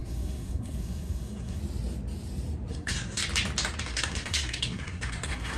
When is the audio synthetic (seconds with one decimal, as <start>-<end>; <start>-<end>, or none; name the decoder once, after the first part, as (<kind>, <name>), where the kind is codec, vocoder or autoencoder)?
0.0-1.6 (codec, SNAC); 2.7-3.2; 3.8-5.6